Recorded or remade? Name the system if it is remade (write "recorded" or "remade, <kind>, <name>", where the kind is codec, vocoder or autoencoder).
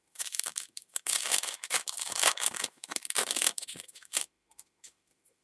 remade, autoencoder, DAC-VAE